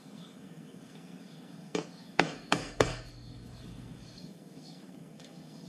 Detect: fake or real fake